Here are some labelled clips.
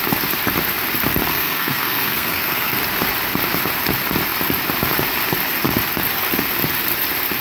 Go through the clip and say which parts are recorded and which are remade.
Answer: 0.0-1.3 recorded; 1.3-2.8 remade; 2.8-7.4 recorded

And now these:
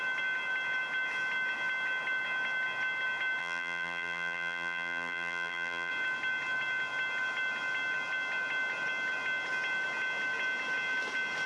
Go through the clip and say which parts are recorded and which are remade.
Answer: 0.0-3.4 recorded; 3.4-5.9 remade; 5.9-11.5 recorded

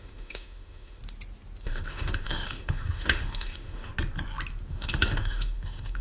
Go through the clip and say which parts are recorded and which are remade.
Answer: 0.0-1.0 remade; 1.0-1.6 recorded; 1.6-3.9 remade; 3.9-4.7 recorded; 4.7-6.0 remade

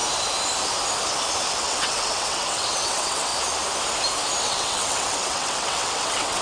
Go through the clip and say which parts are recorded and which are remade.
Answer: 0.0-1.5 recorded; 1.5-3.3 remade; 3.3-4.4 recorded; 4.4-6.4 remade